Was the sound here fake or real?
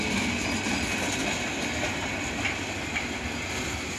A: real